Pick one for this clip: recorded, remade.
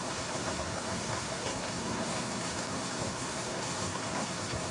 remade